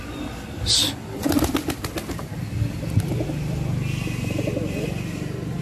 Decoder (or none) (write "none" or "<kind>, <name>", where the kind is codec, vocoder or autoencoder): none